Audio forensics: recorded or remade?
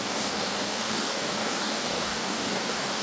remade